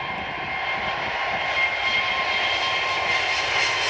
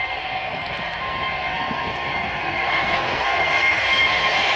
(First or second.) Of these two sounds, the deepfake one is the second